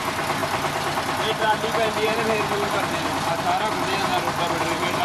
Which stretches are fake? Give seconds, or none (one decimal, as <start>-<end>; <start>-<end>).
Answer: 0.4-2.8